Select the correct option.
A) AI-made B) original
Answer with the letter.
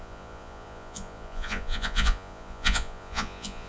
A